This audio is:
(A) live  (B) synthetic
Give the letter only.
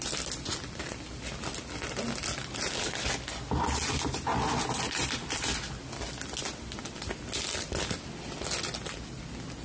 A